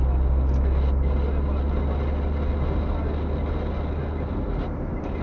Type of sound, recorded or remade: recorded